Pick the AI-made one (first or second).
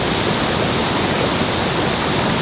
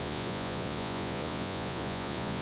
second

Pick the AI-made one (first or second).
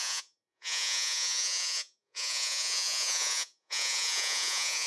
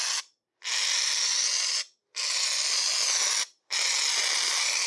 first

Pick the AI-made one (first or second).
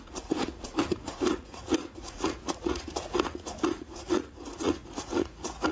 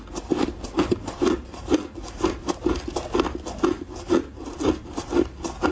first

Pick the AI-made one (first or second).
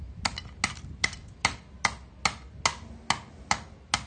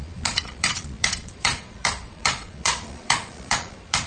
second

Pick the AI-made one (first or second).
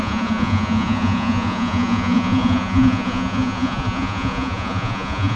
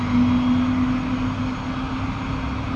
first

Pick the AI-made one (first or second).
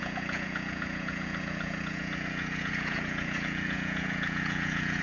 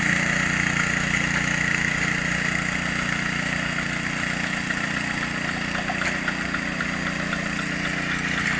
first